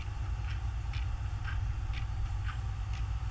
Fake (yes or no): no